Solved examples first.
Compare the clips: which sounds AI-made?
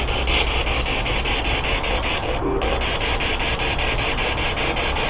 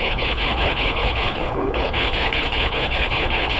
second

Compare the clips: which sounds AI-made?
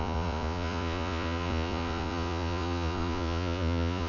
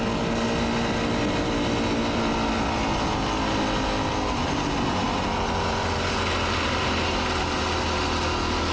first